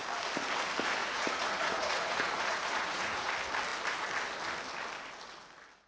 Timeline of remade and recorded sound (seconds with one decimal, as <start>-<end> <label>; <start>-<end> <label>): 0.0-1.0 recorded; 1.0-3.3 remade; 3.3-5.9 recorded